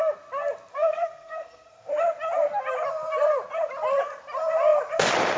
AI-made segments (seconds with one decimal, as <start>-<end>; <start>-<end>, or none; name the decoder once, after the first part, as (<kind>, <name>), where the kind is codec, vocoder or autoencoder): 0.7-1.9 (codec, SNAC)